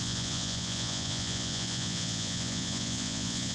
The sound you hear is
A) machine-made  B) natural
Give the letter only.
A